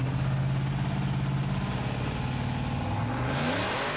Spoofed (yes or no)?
no